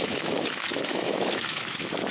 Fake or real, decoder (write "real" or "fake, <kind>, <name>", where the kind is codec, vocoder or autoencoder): fake, autoencoder, DAC-VAE